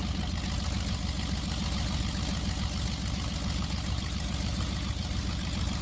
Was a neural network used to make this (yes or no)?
no